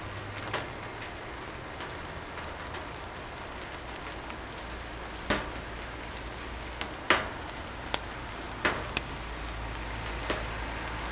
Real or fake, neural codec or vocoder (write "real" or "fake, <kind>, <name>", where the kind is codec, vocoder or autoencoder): real